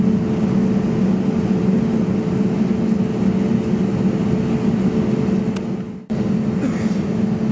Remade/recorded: recorded